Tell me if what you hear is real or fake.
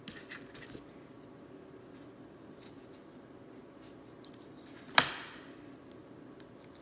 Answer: real